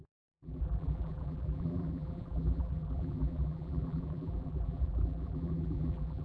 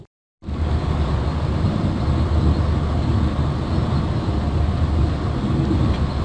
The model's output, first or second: first